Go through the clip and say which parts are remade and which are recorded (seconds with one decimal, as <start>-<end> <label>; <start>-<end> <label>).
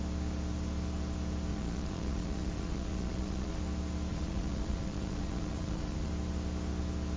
0.0-1.5 recorded; 1.5-3.6 remade; 3.6-4.1 recorded; 4.1-6.1 remade; 6.1-7.2 recorded